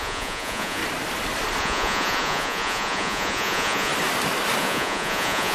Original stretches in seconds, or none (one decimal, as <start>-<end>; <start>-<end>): 0.8-1.6; 3.9-4.6